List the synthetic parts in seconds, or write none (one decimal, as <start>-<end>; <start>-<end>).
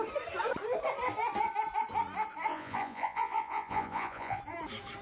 2.5-4.4